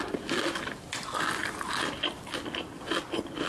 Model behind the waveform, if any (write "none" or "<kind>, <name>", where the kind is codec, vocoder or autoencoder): none